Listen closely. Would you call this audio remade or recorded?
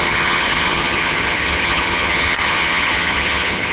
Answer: remade